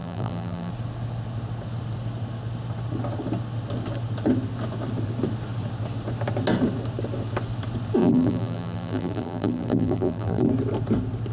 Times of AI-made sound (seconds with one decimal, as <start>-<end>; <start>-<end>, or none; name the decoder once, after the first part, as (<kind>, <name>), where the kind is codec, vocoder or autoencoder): 0.0-0.7 (vocoder, BigVGAN v2); 8.0-10.5